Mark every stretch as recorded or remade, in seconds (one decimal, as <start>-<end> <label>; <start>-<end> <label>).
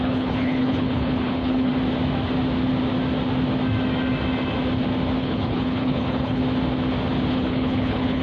0.0-1.7 remade; 1.7-5.2 recorded; 5.2-6.4 remade; 6.4-7.3 recorded; 7.3-8.2 remade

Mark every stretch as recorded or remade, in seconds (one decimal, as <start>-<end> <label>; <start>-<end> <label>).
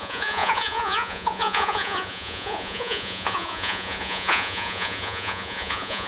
0.0-6.1 remade